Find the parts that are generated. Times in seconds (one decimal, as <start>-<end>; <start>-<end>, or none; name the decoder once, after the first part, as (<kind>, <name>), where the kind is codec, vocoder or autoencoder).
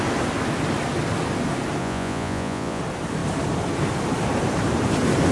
1.8-2.8 (vocoder, Vocos)